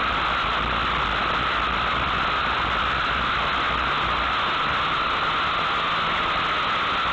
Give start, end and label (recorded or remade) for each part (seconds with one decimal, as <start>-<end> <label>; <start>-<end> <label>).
0.0-7.1 recorded